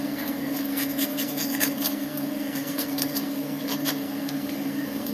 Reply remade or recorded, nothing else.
remade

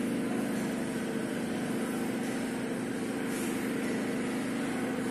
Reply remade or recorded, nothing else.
recorded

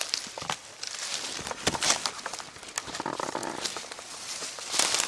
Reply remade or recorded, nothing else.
recorded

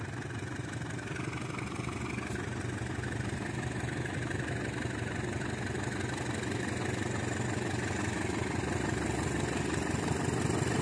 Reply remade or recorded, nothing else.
recorded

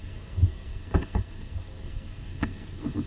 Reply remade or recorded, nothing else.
remade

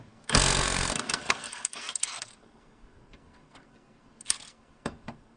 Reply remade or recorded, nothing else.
remade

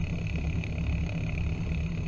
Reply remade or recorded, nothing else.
recorded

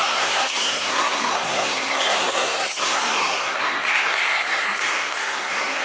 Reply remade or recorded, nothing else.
remade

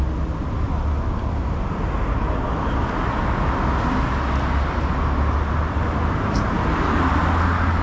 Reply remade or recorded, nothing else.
recorded